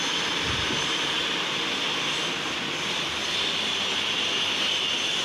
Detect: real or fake real